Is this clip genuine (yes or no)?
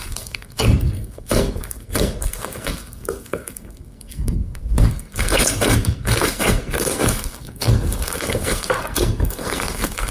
no